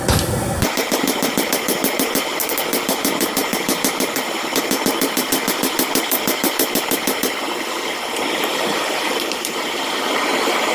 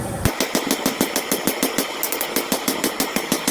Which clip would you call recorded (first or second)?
second